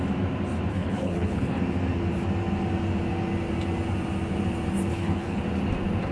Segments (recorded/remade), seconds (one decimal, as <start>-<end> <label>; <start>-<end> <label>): 0.0-0.7 recorded; 0.7-1.6 remade; 1.6-4.9 recorded; 4.9-5.4 remade; 5.4-6.1 recorded